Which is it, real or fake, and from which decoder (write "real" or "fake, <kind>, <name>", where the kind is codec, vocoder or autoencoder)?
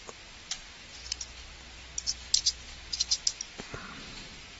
real